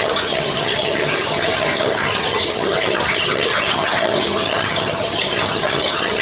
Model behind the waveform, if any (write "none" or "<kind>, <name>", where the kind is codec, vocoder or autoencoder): vocoder, HiFi-GAN